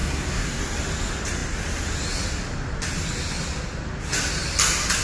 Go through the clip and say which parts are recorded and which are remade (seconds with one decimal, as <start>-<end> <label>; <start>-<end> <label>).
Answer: 0.0-0.6 remade; 0.6-5.0 recorded